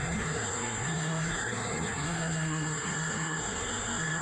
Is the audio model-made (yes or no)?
yes